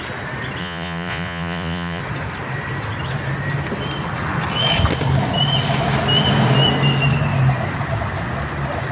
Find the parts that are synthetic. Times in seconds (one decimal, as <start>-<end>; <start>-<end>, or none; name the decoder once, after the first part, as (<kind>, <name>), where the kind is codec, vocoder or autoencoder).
0.6-2.0 (vocoder, Vocos)